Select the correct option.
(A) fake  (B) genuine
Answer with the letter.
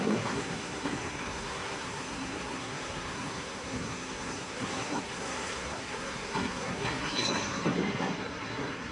A